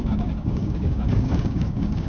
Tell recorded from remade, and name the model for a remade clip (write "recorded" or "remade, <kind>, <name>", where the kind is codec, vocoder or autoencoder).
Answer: remade, codec, DAC